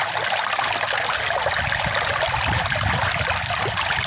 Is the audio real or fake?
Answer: real